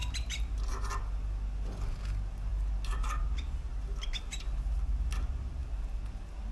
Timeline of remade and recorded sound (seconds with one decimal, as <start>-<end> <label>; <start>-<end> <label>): 0.0-6.5 recorded